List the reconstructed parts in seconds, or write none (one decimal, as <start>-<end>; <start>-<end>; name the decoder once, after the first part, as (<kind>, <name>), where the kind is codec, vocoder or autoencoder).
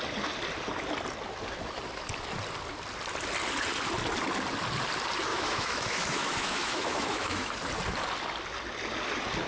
5.3-7.5 (autoencoder, DAC-VAE)